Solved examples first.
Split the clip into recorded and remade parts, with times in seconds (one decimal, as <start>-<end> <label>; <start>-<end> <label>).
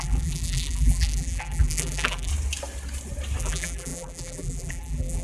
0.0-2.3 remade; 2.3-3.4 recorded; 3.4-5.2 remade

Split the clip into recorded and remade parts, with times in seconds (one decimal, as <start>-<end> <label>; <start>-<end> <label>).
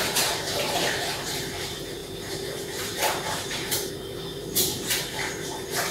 0.0-5.9 remade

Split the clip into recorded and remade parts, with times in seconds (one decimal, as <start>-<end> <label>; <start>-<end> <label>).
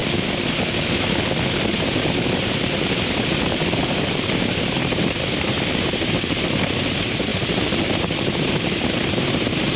0.0-1.5 recorded; 1.5-9.8 remade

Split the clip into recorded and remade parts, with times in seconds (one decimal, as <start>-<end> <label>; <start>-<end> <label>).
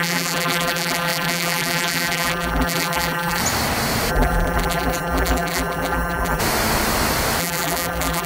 0.0-3.4 remade; 3.4-4.1 recorded; 4.1-6.4 remade; 6.4-7.4 recorded; 7.4-8.3 remade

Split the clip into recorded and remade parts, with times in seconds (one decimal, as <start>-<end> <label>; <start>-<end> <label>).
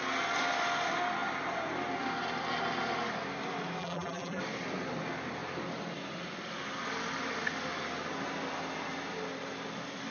0.0-3.8 recorded; 3.8-4.4 remade; 4.4-10.1 recorded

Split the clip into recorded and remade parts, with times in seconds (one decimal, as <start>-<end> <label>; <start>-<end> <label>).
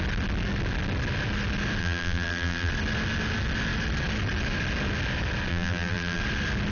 0.0-1.8 recorded; 1.8-2.7 remade; 2.7-5.5 recorded; 5.5-6.2 remade; 6.2-6.7 recorded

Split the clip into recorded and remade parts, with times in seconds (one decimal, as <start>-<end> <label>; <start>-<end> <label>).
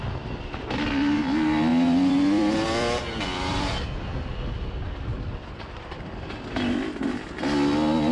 0.0-1.7 recorded; 1.7-4.3 remade; 4.3-5.1 recorded; 5.1-6.3 remade; 6.3-8.1 recorded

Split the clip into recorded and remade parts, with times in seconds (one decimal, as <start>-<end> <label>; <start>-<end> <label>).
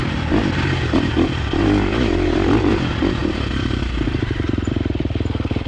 0.0-2.7 remade; 2.7-3.2 recorded; 3.2-5.3 remade; 5.3-5.7 recorded